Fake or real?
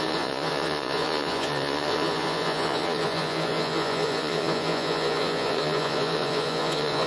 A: fake